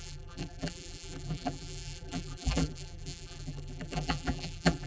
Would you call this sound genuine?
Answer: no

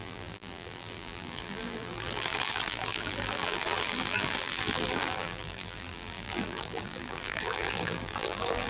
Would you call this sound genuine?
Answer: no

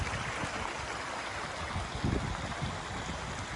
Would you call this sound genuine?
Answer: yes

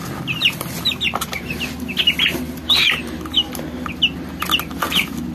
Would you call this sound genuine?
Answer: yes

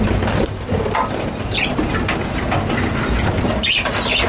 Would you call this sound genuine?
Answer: yes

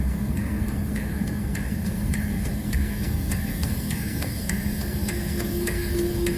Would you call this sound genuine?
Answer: no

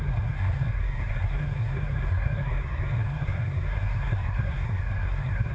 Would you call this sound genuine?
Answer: no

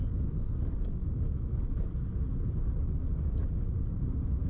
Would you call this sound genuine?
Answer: yes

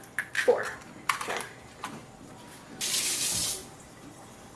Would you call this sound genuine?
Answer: yes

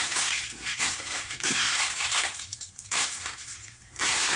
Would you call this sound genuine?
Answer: no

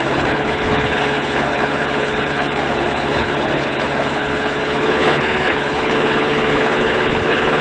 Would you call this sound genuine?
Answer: no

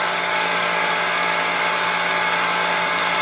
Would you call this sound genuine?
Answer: no